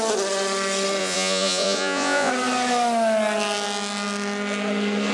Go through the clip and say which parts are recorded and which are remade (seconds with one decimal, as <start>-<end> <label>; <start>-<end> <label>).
0.0-1.0 recorded; 1.0-2.3 remade; 2.3-5.1 recorded